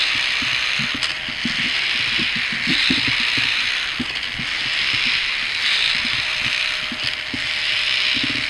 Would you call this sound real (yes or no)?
yes